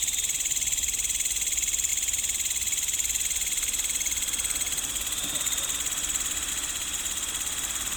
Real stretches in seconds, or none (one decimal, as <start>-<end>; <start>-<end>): 0.0-8.0